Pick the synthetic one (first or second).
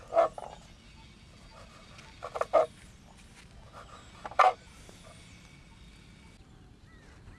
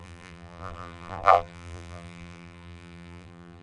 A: second